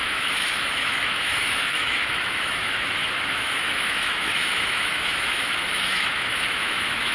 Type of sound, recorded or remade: remade